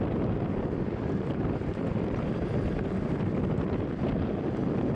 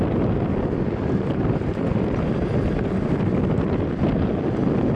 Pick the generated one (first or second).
first